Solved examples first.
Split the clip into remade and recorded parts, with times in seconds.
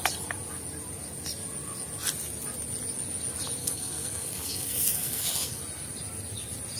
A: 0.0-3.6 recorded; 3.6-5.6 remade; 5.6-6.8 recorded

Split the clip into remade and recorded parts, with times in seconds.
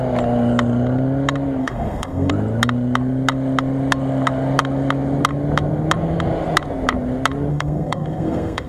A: 0.0-1.6 recorded; 1.6-2.3 remade; 2.3-7.5 recorded; 7.5-8.7 remade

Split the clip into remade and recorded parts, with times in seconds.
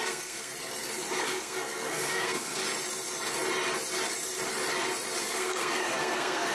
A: 0.0-0.5 remade; 0.5-1.2 recorded; 1.2-2.6 remade; 2.6-5.2 recorded; 5.2-6.5 remade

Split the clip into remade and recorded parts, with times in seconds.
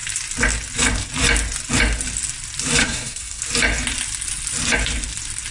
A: 0.0-2.8 recorded; 2.8-3.4 remade; 3.4-5.5 recorded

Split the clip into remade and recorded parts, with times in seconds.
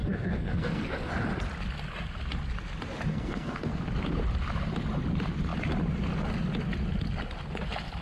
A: 0.0-0.8 remade; 0.8-3.1 recorded; 3.1-3.8 remade; 3.8-8.0 recorded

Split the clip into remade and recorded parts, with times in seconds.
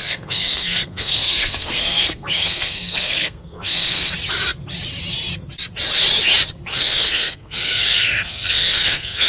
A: 0.0-4.1 remade; 4.1-6.7 recorded; 6.7-9.3 remade